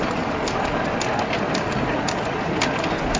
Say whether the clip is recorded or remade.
recorded